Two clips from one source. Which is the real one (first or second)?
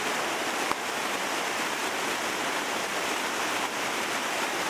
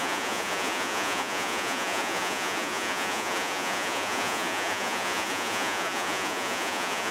first